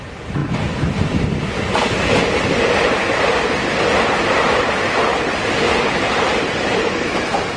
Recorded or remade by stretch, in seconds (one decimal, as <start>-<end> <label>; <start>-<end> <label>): 0.0-7.6 recorded